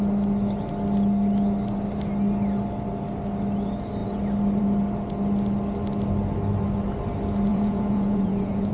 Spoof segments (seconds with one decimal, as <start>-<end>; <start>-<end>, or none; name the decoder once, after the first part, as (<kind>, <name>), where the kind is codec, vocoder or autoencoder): 7.5-8.7 (vocoder, Vocos)

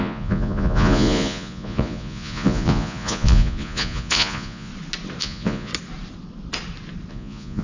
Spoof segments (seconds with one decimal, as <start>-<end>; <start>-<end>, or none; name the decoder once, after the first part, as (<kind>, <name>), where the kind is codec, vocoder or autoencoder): 0.0-4.7 (vocoder, Vocos); 5.2-5.7; 7.1-7.6

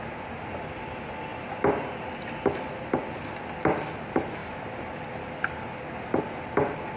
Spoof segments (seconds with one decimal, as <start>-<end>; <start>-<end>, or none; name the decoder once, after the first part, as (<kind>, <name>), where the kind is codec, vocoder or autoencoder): none

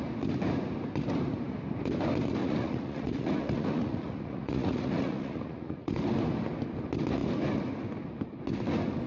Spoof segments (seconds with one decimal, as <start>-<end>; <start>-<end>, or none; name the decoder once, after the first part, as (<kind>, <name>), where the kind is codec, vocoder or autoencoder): 2.4-6.0 (vocoder, Vocos)

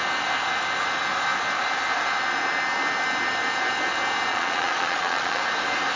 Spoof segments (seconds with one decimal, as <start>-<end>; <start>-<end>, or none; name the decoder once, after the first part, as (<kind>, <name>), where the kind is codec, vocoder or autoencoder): 4.3-5.4 (vocoder, Vocos)

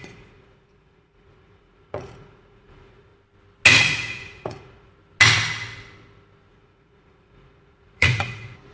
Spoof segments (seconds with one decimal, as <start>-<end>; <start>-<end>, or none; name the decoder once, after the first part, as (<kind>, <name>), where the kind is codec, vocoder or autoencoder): 0.0-3.1 (vocoder, Vocos); 3.8-4.9; 6.5-8.7